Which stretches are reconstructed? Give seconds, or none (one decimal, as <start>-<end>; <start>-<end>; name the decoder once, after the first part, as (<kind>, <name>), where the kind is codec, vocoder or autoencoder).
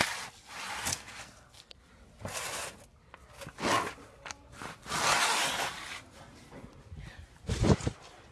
0.9-1.8 (codec, SNAC)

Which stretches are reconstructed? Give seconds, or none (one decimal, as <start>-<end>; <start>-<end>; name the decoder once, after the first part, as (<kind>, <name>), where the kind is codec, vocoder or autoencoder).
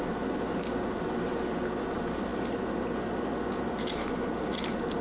none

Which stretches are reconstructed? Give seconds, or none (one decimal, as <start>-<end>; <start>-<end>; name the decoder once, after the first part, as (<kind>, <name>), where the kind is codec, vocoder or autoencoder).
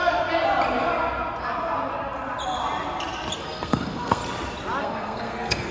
3.4-4.2 (codec, SNAC); 4.8-5.7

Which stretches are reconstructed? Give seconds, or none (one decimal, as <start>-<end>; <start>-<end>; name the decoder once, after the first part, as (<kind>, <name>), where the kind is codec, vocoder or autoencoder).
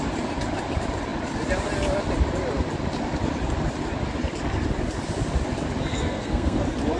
5.9-6.6 (codec, SNAC)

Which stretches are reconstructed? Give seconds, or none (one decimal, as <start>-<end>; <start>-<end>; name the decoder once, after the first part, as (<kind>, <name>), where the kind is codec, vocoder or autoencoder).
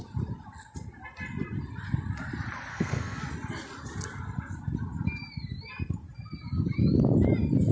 2.7-3.2 (codec, SNAC)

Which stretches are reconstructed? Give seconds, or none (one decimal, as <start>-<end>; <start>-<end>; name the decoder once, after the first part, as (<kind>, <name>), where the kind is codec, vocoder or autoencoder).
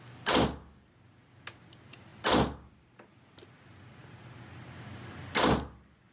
none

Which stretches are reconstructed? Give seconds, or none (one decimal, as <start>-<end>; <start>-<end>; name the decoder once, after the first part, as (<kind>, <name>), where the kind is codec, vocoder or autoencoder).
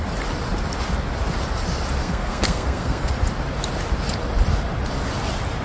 2.0-3.1 (codec, SNAC)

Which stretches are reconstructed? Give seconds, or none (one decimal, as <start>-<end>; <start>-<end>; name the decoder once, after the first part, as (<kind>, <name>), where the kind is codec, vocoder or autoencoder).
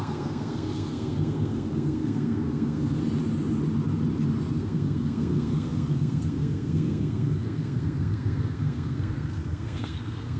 0.0-3.0 (codec, SNAC); 4.5-10.4